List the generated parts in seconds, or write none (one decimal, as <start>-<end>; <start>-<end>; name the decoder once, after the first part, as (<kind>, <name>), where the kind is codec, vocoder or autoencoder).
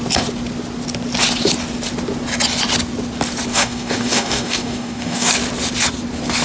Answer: 3.5-5.3 (codec, DAC)